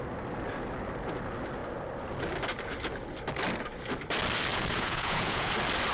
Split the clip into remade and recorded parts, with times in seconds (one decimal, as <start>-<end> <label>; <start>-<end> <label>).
0.0-4.5 recorded; 4.5-5.5 remade; 5.5-5.9 recorded